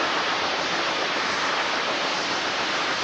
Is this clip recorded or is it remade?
recorded